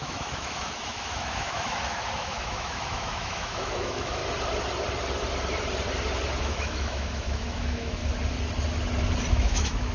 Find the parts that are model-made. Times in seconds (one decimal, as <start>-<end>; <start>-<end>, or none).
0.0-4.2; 6.4-8.0; 9.3-9.9